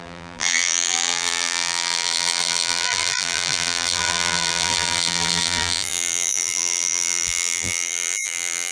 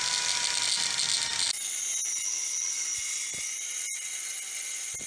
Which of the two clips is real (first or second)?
second